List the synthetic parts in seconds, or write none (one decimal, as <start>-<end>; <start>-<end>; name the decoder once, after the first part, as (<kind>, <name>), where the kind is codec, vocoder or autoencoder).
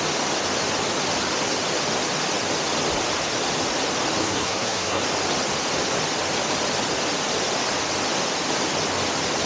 4.2-5.0 (codec, SNAC)